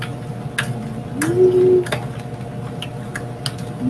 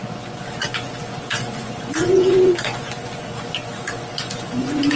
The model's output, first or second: second